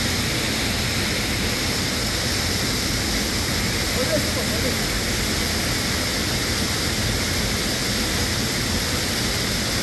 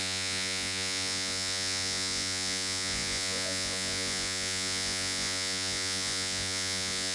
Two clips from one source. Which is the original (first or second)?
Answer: first